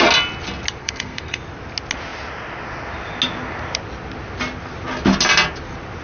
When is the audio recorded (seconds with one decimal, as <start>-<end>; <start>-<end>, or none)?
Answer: 0.0-0.8; 1.4-6.0